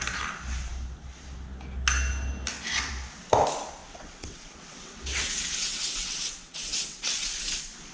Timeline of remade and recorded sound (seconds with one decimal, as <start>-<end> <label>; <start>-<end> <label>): 0.0-3.8 recorded; 3.8-7.4 remade; 7.4-7.9 recorded